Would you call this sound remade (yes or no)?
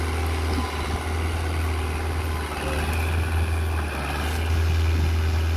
no